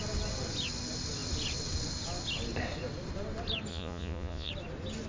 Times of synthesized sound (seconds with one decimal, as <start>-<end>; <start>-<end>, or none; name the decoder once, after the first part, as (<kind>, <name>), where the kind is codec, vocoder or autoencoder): 3.7-4.5 (vocoder, Vocos)